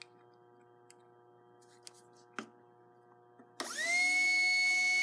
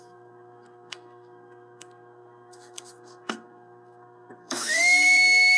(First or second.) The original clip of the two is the first